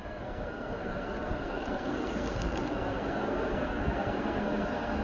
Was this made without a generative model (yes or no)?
no